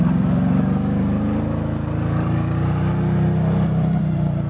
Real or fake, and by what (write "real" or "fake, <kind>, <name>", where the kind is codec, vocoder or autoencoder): fake, vocoder, BigVGAN v2